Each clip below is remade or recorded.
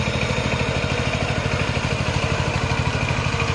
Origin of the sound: recorded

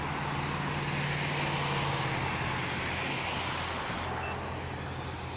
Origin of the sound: recorded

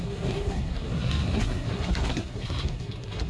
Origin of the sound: remade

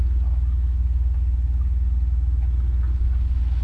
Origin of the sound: recorded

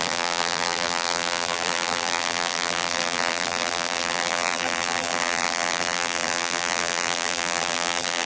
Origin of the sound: remade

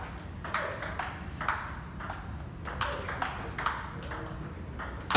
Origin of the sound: recorded